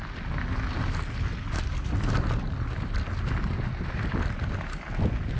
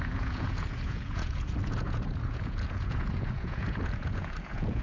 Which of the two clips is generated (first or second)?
second